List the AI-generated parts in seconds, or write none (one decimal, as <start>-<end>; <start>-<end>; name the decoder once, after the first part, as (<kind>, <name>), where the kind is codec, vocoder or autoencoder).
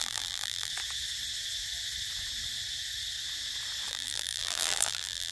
0.0-0.7 (vocoder, BigVGAN v2); 3.9-5.3